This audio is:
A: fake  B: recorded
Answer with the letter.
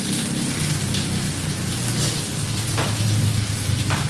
B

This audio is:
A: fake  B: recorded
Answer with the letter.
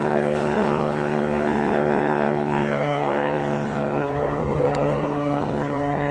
A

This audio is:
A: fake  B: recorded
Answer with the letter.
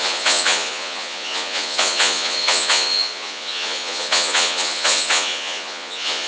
A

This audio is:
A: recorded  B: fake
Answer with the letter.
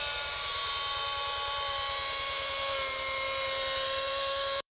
B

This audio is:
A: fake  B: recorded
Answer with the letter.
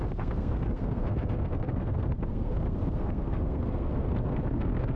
A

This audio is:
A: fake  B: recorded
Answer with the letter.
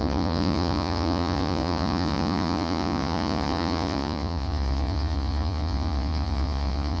A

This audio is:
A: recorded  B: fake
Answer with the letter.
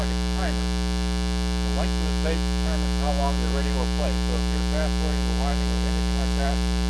A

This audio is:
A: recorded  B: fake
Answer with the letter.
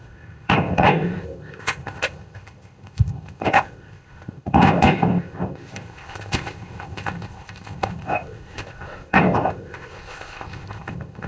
B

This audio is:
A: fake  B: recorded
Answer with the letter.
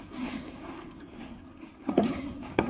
A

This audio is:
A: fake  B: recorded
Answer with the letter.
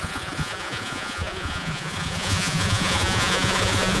A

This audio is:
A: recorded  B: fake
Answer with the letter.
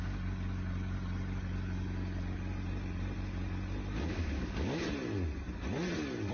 A